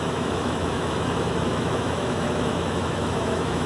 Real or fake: fake